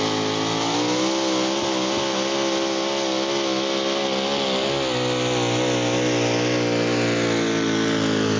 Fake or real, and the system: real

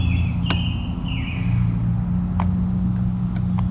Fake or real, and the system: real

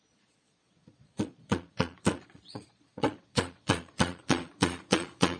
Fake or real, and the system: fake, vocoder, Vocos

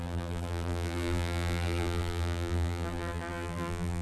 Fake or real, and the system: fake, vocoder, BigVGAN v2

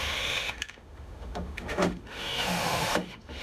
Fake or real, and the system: fake, autoencoder, DAC-VAE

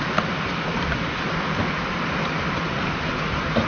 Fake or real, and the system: real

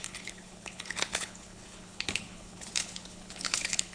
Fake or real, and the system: fake, codec, HILCodec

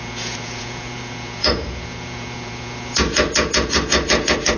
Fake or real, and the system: fake, vocoder, Vocos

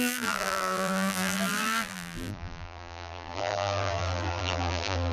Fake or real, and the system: fake, vocoder, BigVGAN v2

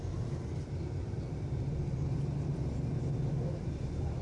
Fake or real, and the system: real